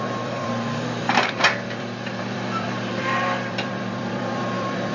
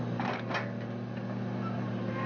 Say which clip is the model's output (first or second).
first